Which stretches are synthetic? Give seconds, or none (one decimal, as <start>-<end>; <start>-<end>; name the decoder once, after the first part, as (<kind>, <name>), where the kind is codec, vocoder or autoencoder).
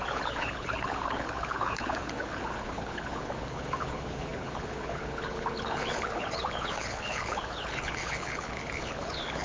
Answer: 0.0-9.4 (codec, HILCodec)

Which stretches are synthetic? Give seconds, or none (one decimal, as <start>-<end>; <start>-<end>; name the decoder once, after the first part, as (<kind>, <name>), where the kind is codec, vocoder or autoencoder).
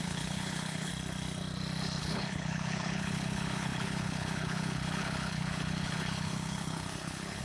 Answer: 0.0-0.9 (codec, HILCodec); 2.0-7.4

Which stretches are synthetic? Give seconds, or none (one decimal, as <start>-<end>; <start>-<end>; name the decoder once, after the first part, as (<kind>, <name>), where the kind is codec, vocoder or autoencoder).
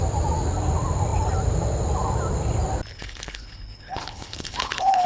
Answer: 2.9-5.1 (codec, HILCodec)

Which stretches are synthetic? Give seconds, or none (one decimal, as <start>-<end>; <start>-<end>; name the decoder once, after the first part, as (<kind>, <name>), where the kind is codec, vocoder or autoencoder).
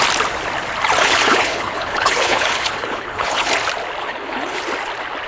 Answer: 1.0-3.5 (codec, HILCodec); 4.0-4.6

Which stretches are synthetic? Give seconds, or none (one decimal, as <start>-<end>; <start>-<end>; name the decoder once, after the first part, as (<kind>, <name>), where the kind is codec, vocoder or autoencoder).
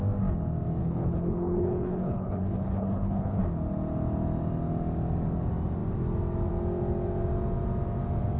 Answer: 0.8-3.4 (codec, HILCodec)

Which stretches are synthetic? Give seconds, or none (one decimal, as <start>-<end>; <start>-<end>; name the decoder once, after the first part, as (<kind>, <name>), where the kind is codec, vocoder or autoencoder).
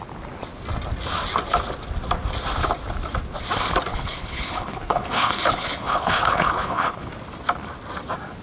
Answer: 3.9-7.1 (codec, HILCodec)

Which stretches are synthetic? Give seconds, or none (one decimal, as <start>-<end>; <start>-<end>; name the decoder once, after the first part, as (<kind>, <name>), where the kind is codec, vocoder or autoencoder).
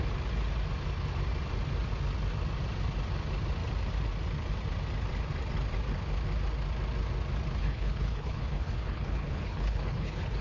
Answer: 7.6-10.4 (codec, HILCodec)